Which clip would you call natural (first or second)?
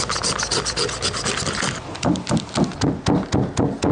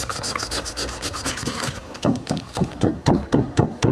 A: first